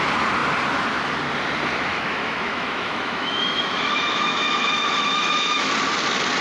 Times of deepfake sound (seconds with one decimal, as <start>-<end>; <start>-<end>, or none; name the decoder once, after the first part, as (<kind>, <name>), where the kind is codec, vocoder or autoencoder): 1.9-5.7 (autoencoder, DAC-VAE)